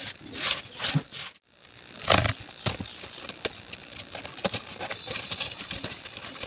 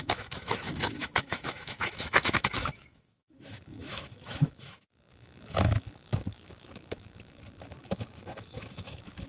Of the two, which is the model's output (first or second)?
second